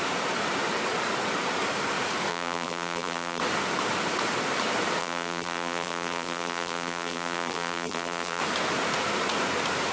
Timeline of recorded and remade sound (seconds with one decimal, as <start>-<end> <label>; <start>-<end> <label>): 0.0-2.3 recorded; 2.3-3.4 remade; 3.4-5.0 recorded; 5.0-8.4 remade; 8.4-9.9 recorded